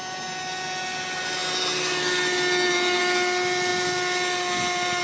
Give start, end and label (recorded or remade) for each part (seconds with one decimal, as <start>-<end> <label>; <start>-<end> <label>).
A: 0.0-5.0 recorded